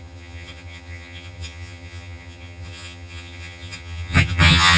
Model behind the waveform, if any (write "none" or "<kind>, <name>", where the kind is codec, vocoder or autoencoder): vocoder, HiFi-GAN